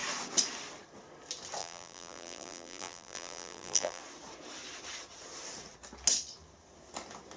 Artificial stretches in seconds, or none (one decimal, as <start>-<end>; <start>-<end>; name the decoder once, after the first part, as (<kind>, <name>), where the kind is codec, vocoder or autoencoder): 1.6-4.0 (vocoder, BigVGAN v2)